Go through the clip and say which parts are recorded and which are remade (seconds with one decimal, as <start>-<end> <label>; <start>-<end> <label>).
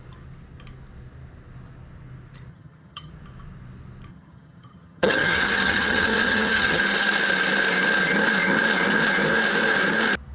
0.0-2.5 recorded; 2.5-3.1 remade; 3.1-4.1 recorded; 4.1-6.8 remade; 6.8-10.3 recorded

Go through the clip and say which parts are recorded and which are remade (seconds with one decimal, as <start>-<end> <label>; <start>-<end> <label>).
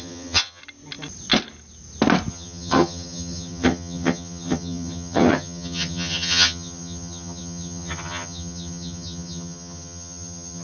0.0-0.6 remade; 0.6-2.3 recorded; 2.3-10.6 remade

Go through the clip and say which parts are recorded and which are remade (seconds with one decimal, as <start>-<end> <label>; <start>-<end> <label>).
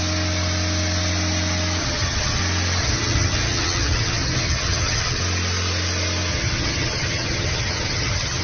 0.0-1.8 recorded; 1.8-2.4 remade; 2.4-2.8 recorded; 2.8-5.2 remade; 5.2-6.3 recorded; 6.3-8.4 remade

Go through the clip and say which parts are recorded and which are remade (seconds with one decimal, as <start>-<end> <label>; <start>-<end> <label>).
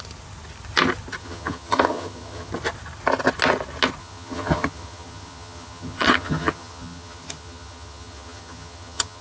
0.0-1.2 recorded; 1.2-2.5 remade; 2.5-4.0 recorded; 4.0-9.2 remade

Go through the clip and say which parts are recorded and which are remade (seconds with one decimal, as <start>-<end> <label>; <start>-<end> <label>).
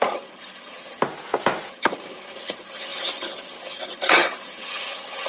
0.0-1.0 remade; 1.0-1.7 recorded; 1.7-5.3 remade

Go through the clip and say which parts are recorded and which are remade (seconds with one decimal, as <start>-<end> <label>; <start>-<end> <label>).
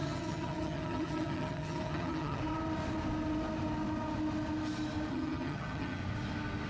0.0-2.4 remade; 2.4-5.1 recorded; 5.1-6.0 remade; 6.0-6.7 recorded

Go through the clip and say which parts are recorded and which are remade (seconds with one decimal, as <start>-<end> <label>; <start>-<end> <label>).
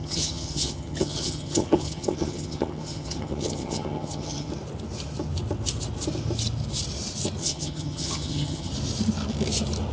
0.0-4.5 remade; 4.5-7.4 recorded; 7.4-8.7 remade; 8.7-9.9 recorded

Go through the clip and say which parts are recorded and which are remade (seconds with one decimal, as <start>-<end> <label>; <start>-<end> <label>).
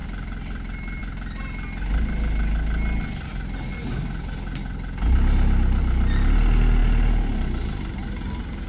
0.0-8.7 recorded